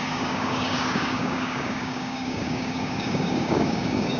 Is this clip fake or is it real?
fake